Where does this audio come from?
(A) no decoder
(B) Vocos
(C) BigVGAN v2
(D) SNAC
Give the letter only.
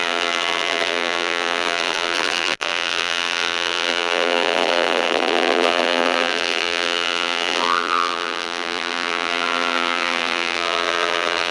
C